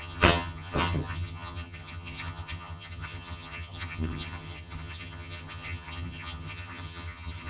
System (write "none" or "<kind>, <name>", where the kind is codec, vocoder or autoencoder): vocoder, HiFi-GAN